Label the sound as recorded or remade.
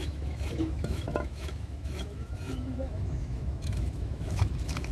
remade